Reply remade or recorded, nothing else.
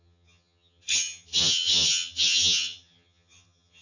remade